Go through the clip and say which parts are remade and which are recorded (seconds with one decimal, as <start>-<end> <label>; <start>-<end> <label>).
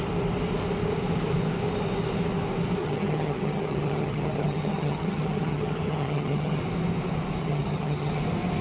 0.0-2.8 recorded; 2.8-6.6 remade; 6.6-7.4 recorded; 7.4-8.2 remade; 8.2-8.6 recorded